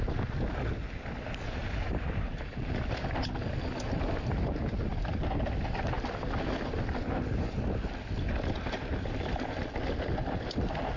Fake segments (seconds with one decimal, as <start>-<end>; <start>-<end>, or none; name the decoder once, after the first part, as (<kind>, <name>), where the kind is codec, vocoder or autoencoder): 1.6-2.7 (vocoder, BigVGAN v2)